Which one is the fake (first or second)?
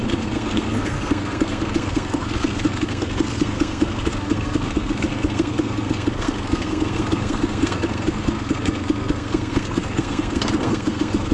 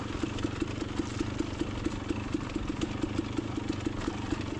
first